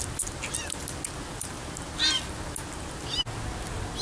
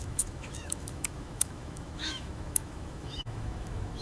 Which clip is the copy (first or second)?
second